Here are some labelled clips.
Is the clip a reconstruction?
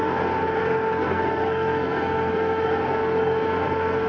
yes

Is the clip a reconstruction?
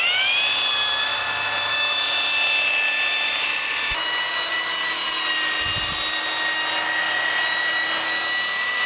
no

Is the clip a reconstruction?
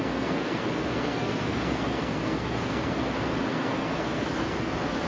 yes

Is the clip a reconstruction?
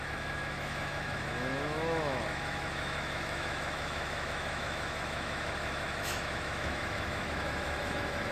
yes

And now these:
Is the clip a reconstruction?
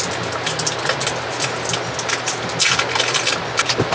no